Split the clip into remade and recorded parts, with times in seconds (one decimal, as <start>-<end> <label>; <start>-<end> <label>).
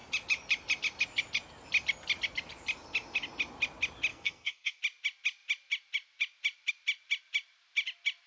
0.0-4.1 recorded; 4.1-4.8 remade; 4.8-8.3 recorded